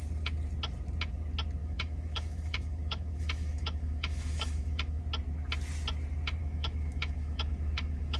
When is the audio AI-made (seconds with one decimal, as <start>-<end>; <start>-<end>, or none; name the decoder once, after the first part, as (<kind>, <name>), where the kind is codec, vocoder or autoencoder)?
1.6-5.0 (autoencoder, DAC-VAE); 6.4-8.2